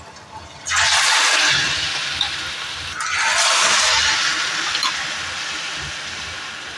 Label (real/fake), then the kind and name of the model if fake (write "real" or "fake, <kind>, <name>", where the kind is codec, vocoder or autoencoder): real